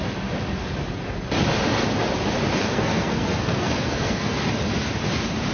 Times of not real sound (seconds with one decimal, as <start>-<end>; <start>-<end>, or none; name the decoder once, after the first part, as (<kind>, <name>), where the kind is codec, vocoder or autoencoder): 2.6-4.5 (codec, SNAC)